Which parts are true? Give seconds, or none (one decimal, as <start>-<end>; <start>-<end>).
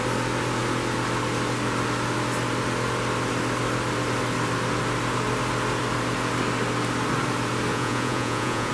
0.0-7.7